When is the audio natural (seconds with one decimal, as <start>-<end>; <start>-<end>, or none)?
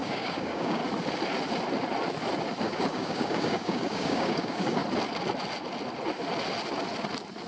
0.8-2.6; 4.8-7.5